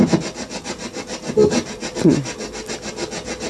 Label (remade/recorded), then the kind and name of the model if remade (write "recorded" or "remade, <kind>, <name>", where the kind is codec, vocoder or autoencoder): recorded